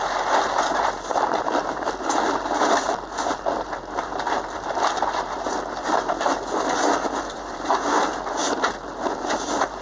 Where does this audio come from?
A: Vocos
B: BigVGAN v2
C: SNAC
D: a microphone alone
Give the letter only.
B